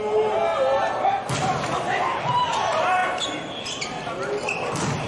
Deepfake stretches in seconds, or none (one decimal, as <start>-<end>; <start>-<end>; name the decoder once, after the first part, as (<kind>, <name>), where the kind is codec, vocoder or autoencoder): none